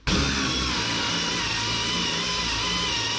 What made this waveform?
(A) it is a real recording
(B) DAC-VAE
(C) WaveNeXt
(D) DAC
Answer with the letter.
A